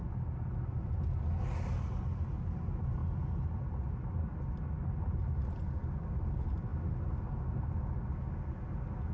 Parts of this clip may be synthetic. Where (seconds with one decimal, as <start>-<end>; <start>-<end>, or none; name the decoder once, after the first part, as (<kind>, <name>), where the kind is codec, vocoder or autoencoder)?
none